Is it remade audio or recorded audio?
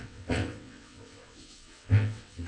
remade